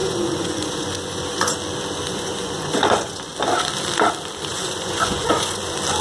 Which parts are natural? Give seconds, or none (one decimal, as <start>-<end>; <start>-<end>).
1.5-2.1; 3.3-4.5; 5.6-6.0